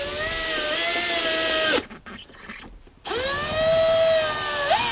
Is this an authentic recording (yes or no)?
yes